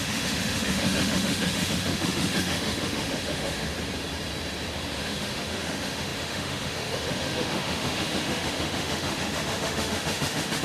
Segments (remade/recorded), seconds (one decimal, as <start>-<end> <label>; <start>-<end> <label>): 0.0-3.7 remade; 3.7-5.0 recorded; 5.0-10.6 remade